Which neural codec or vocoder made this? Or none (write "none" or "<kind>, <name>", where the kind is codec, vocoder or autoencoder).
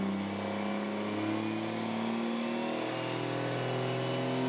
none